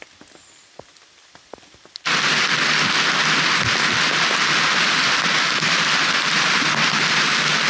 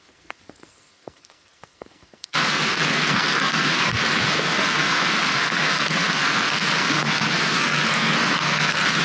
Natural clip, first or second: first